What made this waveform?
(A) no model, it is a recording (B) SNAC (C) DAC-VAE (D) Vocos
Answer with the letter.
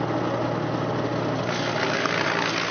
A